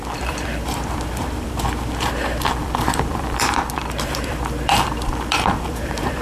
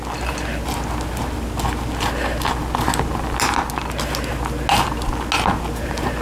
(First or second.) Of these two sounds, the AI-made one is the first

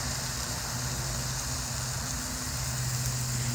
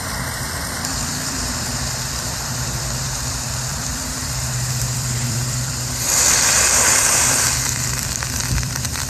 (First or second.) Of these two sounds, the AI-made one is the second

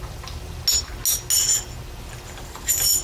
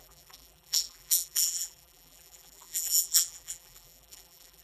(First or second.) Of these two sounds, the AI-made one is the second